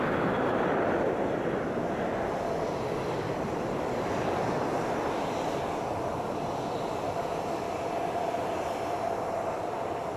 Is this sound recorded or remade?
recorded